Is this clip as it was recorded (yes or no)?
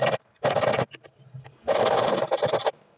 yes